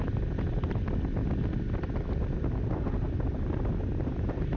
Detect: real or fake real